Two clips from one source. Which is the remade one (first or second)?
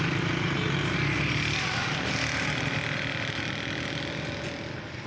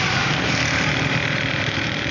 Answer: second